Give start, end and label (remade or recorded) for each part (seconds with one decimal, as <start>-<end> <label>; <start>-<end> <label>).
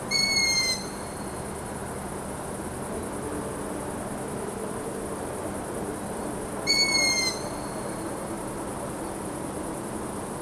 0.0-10.4 recorded